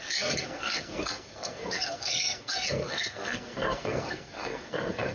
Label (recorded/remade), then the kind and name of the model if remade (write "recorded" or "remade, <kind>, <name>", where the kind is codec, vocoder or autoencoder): remade, codec, SNAC